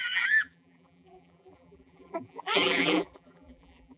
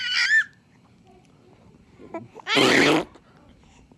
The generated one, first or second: first